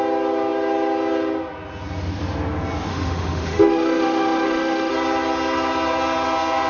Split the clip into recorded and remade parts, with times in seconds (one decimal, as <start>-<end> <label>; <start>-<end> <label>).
0.0-2.9 recorded; 2.9-4.9 remade; 4.9-6.7 recorded